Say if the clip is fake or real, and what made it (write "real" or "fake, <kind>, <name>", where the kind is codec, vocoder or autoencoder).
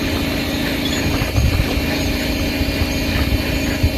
real